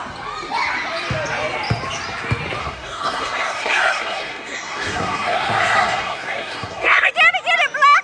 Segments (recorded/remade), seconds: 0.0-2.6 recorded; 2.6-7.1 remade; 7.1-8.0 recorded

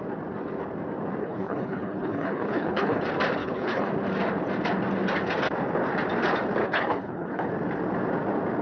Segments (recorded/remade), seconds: 0.0-1.2 recorded; 1.2-3.0 remade; 3.0-3.4 recorded; 3.4-3.9 remade; 3.9-6.6 recorded; 6.6-7.5 remade; 7.5-8.6 recorded

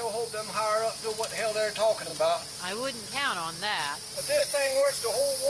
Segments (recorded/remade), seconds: 0.0-4.4 recorded; 4.4-4.9 remade; 4.9-5.5 recorded

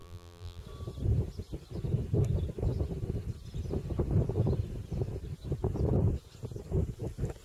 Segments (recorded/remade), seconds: 0.0-0.6 remade; 0.6-7.4 recorded

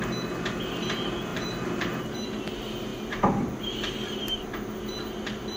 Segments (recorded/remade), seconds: 0.0-1.3 recorded; 1.3-2.0 remade; 2.0-5.6 recorded

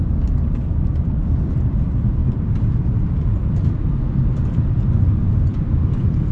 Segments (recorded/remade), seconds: 0.0-2.2 recorded; 2.2-5.1 remade; 5.1-5.5 recorded; 5.5-6.3 remade

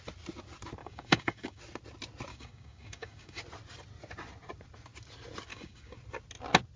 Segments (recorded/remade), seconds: 0.0-0.8 recorded; 0.8-1.6 remade; 1.6-2.3 recorded; 2.3-3.4 remade; 3.4-5.5 recorded; 5.5-6.0 remade; 6.0-6.8 recorded

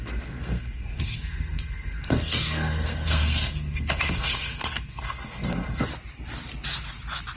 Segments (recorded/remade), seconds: 0.0-5.9 remade; 5.9-7.4 recorded